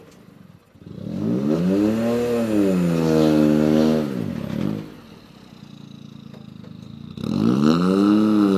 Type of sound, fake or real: real